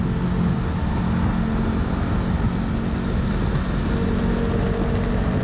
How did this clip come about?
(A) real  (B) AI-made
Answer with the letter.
A